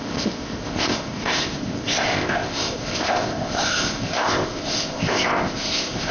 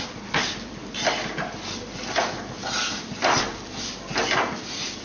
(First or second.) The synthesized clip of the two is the first